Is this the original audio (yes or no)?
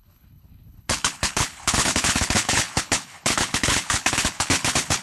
no